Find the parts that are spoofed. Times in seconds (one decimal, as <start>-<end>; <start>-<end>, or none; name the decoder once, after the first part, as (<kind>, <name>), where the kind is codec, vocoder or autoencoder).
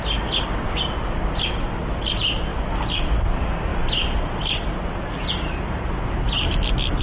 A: 3.7-4.6 (vocoder, BigVGAN v2)